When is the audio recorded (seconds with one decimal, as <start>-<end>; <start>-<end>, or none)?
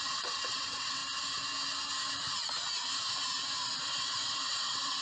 1.0-3.6